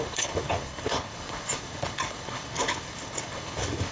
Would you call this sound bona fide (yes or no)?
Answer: no